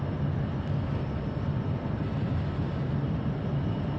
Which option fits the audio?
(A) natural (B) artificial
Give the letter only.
A